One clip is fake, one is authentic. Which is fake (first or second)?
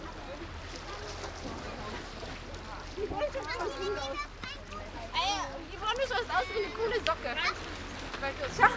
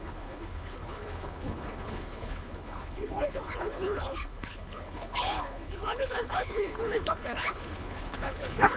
second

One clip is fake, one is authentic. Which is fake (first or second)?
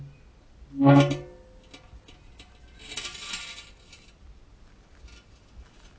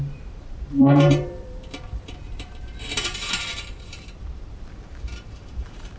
second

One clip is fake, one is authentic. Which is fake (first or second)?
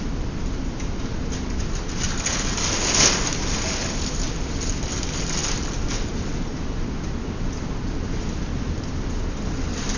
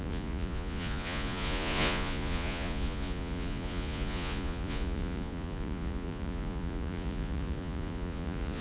second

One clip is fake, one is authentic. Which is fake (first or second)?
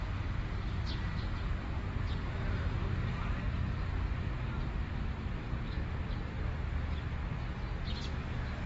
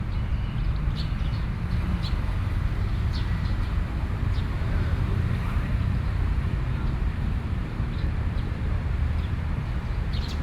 second